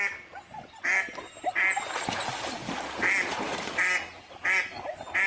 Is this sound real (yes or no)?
yes